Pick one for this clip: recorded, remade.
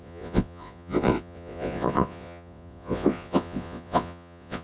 remade